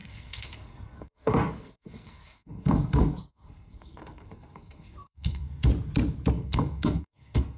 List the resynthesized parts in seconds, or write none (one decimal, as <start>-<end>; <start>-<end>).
0.0-5.7; 6.3-7.6